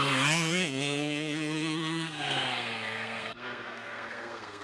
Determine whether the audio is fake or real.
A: fake